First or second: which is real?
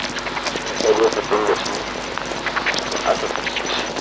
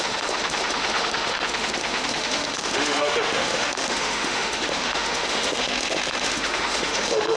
first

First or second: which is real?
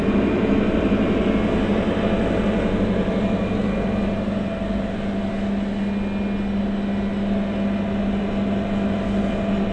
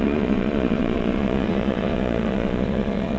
first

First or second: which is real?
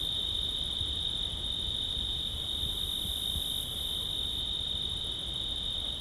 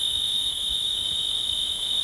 first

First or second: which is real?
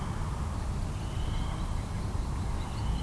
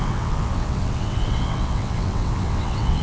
first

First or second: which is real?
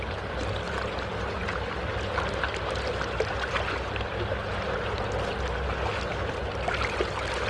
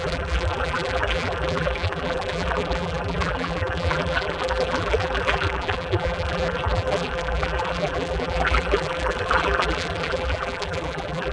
first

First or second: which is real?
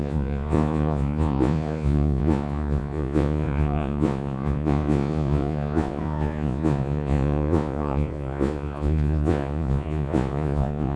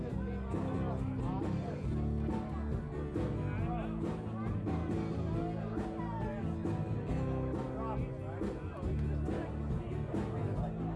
second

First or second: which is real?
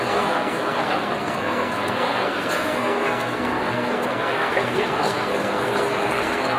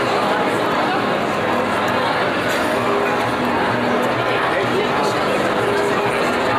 second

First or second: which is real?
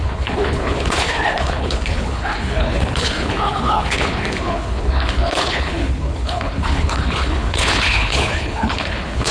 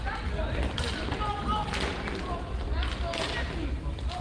second